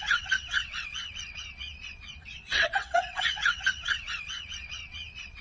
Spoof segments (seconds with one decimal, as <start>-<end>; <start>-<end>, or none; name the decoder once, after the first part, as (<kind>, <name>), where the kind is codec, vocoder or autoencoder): 0.0-5.4 (vocoder, WaveNeXt)